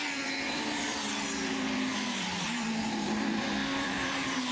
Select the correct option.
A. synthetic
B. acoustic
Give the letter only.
A